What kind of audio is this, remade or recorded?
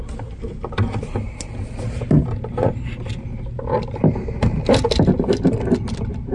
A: recorded